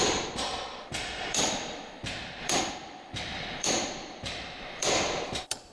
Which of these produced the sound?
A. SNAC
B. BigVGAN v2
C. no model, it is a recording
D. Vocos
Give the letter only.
B